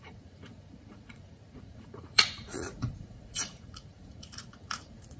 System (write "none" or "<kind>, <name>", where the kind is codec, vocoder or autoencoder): vocoder, Vocos